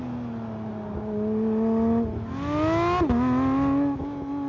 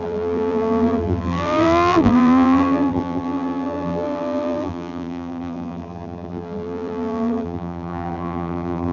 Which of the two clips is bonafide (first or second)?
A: first